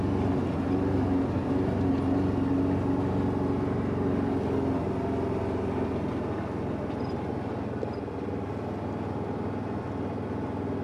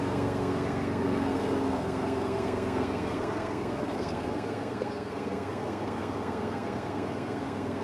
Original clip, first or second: first